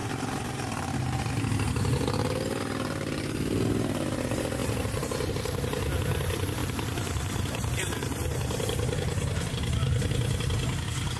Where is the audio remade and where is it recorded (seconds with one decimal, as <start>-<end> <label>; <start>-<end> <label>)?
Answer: 0.0-1.3 remade; 1.3-4.6 recorded; 4.6-5.3 remade; 5.3-6.6 recorded; 6.6-9.5 remade; 9.5-11.2 recorded